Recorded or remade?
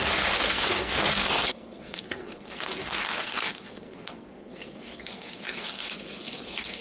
remade